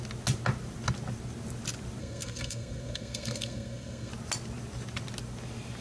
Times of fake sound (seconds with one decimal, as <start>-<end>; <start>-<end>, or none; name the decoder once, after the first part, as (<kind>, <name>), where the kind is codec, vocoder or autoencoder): 2.0-4.1 (codec, SNAC)